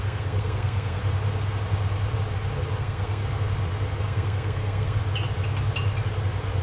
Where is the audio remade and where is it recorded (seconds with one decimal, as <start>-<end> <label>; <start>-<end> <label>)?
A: 0.0-1.0 remade; 1.0-2.8 recorded; 2.8-3.2 remade; 3.2-4.0 recorded; 4.0-5.0 remade; 5.0-6.6 recorded